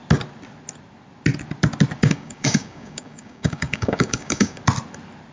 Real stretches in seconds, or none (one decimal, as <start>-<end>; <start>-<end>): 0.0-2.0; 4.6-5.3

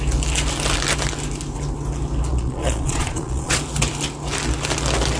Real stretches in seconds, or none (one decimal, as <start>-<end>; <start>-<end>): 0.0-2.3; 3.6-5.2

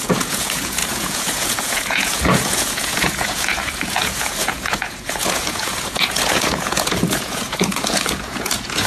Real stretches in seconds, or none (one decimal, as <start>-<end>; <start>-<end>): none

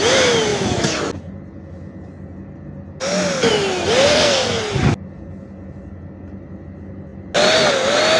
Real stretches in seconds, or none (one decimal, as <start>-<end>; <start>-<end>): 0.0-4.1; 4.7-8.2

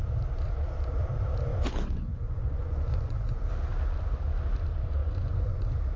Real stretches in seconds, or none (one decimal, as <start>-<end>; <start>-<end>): 0.0-1.5; 3.3-5.0; 5.6-6.0

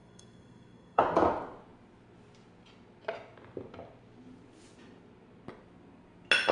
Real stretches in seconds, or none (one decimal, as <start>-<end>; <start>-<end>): 1.0-6.5

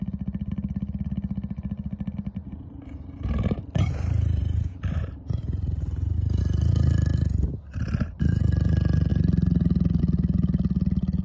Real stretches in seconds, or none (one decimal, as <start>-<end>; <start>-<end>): 0.0-2.4; 6.4-11.2

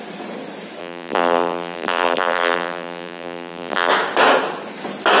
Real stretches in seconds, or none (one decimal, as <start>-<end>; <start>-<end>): 0.0-0.8; 3.9-5.2